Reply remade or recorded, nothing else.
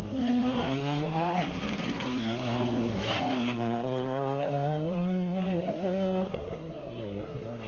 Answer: remade